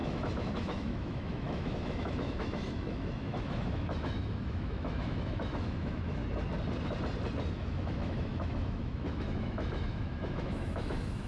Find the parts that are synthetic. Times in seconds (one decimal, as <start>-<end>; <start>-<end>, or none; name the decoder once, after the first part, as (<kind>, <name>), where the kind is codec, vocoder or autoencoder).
0.0-6.2 (autoencoder, DAC-VAE); 7.5-11.3